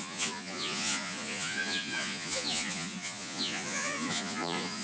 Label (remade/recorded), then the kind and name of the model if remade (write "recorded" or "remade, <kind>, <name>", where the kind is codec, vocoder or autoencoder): remade, vocoder, Vocos